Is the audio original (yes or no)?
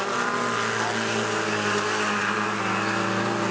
yes